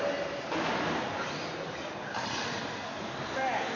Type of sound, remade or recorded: recorded